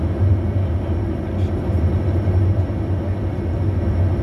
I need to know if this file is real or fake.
real